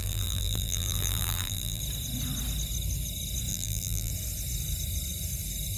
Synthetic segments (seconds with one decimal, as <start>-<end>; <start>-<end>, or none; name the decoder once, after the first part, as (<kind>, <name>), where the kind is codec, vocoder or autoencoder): 0.0-1.8 (vocoder, BigVGAN v2); 3.5-4.1